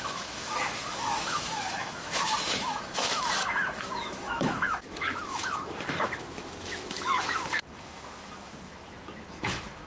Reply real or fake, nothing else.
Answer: fake